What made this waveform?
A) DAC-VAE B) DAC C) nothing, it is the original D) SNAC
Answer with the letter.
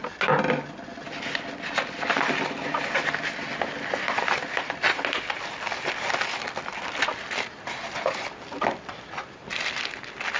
C